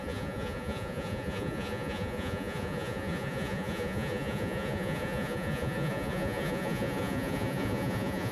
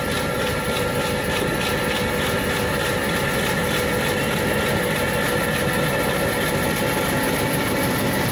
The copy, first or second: first